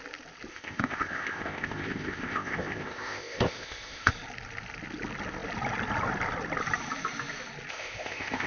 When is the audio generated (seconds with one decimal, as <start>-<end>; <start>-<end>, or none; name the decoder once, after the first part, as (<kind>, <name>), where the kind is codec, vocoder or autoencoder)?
0.5-4.1 (codec, ZipCodec); 7.7-8.5

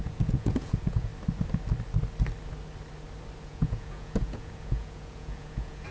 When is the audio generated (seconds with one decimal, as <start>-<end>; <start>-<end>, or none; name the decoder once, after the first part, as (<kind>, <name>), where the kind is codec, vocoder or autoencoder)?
0.0-1.1 (vocoder, Vocos); 3.4-5.9

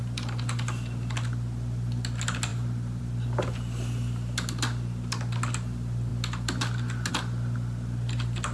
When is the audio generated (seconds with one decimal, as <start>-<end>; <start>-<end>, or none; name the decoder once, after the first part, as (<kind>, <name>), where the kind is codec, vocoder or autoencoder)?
none